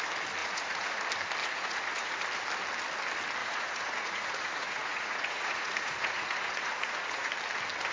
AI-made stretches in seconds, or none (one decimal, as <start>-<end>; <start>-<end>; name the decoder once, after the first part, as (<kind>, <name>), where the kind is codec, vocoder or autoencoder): 0.4-1.0 (vocoder, Vocos); 1.4-2.2; 3.4-7.3